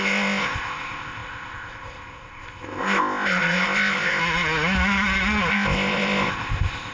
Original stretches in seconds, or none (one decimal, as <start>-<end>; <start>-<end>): 4.2-5.5

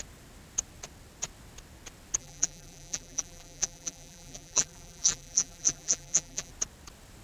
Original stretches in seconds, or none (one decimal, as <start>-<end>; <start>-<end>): 0.0-2.2; 6.5-7.2

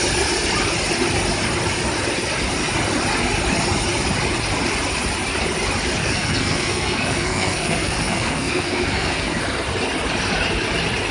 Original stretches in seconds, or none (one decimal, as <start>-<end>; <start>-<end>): 0.0-6.0; 9.4-11.1

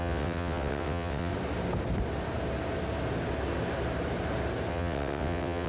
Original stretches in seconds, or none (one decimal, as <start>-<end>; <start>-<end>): 1.3-4.7

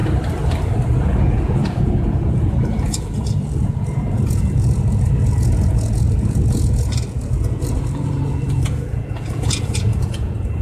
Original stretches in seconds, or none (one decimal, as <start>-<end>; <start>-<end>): 0.0-1.0

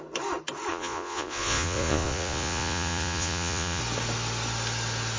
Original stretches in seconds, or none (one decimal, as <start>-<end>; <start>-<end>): 0.0-0.7; 3.8-5.2

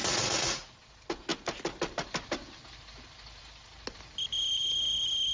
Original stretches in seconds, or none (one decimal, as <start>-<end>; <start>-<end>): 0.7-5.3